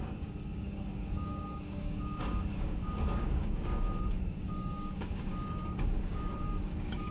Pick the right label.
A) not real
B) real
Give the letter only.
A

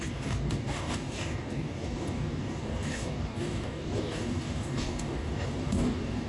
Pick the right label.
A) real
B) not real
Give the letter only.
B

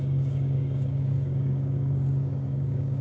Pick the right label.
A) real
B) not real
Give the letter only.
B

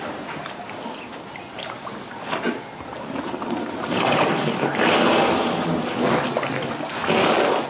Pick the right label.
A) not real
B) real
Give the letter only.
B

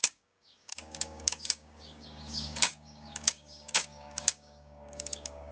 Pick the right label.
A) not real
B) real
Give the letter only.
A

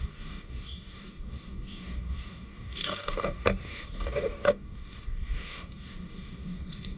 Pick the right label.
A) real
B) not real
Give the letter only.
B